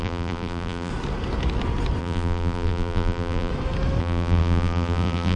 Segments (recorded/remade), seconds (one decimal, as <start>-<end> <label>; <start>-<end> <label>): 0.0-0.9 remade; 0.9-2.0 recorded; 2.0-3.5 remade; 3.5-4.0 recorded; 4.0-5.4 remade